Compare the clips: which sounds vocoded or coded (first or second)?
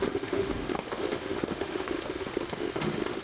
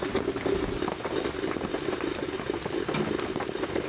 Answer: first